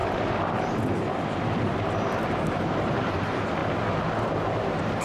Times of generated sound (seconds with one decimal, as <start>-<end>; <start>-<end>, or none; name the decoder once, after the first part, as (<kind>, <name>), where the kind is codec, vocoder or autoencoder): 2.5-3.6 (vocoder, BigVGAN v2); 4.3-5.0